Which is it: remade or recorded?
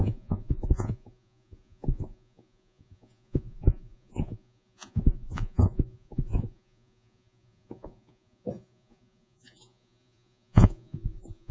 remade